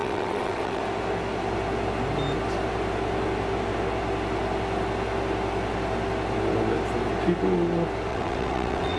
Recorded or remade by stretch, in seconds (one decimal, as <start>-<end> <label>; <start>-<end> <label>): 0.0-0.8 remade; 0.8-8.1 recorded; 8.1-9.0 remade